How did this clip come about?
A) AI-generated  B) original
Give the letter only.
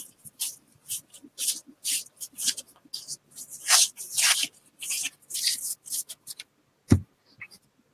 B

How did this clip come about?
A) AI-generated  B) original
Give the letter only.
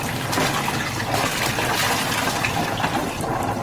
B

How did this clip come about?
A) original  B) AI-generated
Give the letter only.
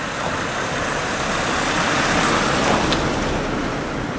A